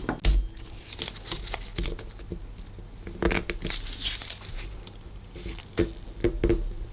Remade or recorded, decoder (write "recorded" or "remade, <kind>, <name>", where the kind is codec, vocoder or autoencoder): recorded